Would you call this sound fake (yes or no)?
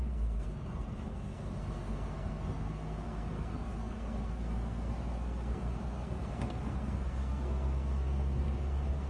yes